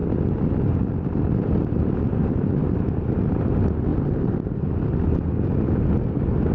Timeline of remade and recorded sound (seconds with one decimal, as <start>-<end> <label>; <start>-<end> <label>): 0.0-6.5 recorded